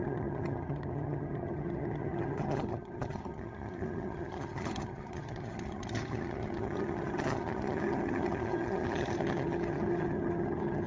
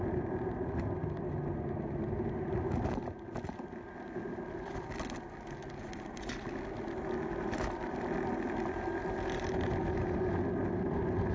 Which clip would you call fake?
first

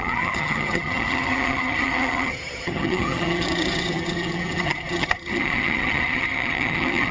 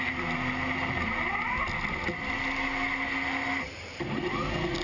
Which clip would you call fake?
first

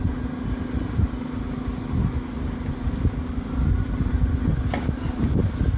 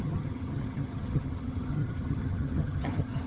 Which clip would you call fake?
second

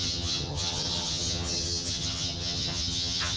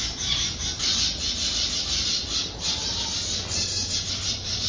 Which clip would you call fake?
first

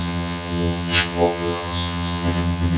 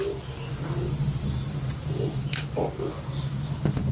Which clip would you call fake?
first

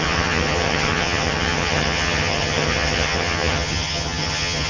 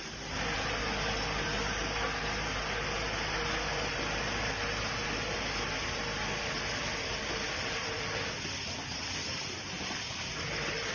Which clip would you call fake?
first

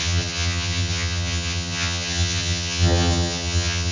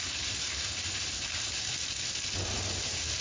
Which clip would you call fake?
first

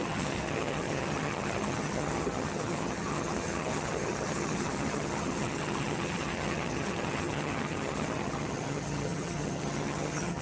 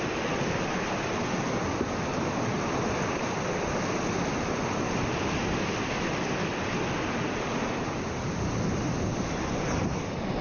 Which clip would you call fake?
first